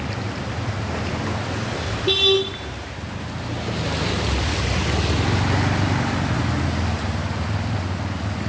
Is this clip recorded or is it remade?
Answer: recorded